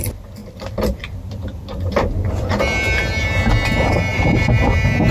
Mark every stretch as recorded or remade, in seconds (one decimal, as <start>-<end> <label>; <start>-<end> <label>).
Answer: 0.0-5.1 remade